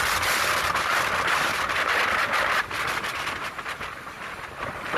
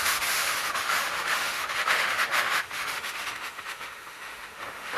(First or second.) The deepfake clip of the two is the second